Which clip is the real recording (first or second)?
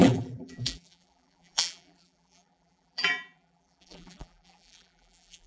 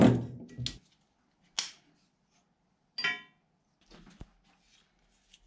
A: second